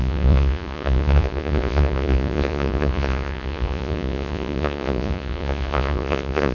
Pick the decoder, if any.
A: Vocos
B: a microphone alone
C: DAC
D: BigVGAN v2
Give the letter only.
A